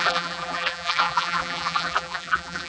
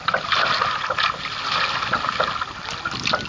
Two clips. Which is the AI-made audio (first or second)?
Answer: first